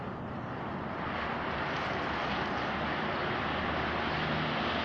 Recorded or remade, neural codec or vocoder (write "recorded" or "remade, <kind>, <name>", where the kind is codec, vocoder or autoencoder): recorded